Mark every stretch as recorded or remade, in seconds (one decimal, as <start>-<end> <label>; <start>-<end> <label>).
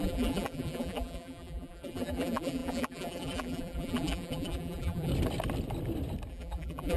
0.0-5.1 remade; 5.1-6.3 recorded; 6.3-7.0 remade